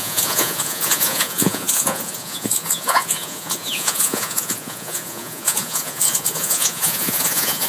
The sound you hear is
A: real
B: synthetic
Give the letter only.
B